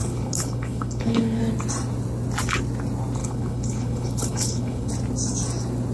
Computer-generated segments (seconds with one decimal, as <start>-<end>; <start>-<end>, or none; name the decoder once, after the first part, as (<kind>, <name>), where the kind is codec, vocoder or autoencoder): 0.0-1.4 (codec, HILCodec); 3.2-4.9